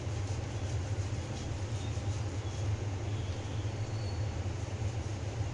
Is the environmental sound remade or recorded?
recorded